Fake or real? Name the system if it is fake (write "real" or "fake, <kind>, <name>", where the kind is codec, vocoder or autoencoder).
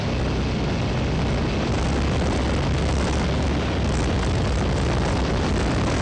real